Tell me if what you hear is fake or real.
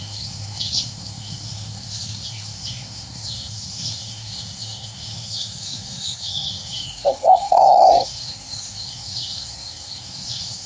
fake